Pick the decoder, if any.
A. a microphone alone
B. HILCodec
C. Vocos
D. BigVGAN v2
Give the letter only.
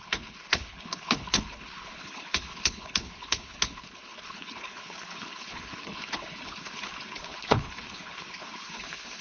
B